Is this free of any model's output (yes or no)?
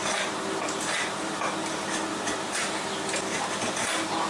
yes